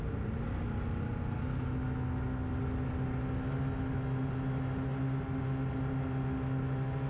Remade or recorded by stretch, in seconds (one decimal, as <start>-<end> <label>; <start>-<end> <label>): 0.0-7.1 recorded